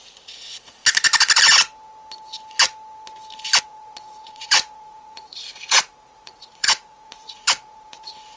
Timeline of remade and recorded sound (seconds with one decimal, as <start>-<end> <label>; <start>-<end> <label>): 0.0-0.8 remade; 0.8-3.6 recorded; 3.6-8.4 remade